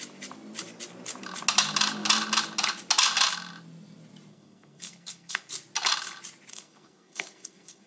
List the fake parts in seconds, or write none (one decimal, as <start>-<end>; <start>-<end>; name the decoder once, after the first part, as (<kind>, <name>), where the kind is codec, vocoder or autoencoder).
4.3-5.5 (codec, SNAC); 6.5-7.9